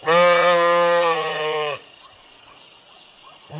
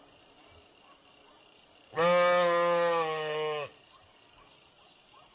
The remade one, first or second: first